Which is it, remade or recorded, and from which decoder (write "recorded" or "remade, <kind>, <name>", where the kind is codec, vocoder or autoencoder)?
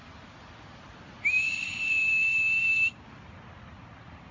recorded